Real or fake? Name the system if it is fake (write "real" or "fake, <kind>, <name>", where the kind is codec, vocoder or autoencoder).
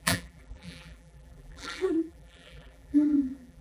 fake, vocoder, BigVGAN v2